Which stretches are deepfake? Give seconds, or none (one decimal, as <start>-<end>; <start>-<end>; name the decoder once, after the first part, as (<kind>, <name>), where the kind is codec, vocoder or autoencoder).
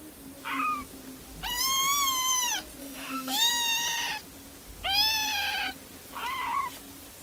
2.8-3.5 (autoencoder, DAC-VAE)